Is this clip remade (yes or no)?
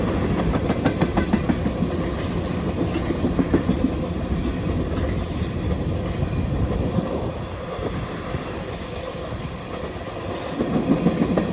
no